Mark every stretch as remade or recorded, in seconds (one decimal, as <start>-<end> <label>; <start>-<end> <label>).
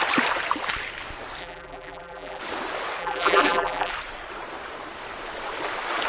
0.0-1.4 recorded; 1.4-2.4 remade; 2.4-3.0 recorded; 3.0-3.9 remade; 3.9-6.1 recorded